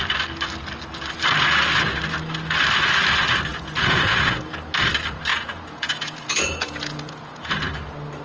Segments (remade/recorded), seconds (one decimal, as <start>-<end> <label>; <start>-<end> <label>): 0.0-3.5 recorded; 3.5-4.4 remade; 4.4-5.3 recorded; 5.3-7.5 remade; 7.5-8.2 recorded